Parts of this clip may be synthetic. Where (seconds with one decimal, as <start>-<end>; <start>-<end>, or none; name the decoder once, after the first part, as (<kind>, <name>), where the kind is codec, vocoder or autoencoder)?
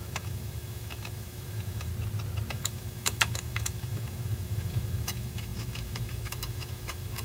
0.0-1.9 (autoencoder, DAC-VAE); 2.5-7.2